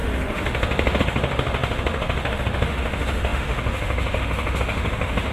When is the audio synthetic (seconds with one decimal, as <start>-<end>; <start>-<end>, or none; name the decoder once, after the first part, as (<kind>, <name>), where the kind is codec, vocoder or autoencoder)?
0.0-5.3 (autoencoder, DAC-VAE)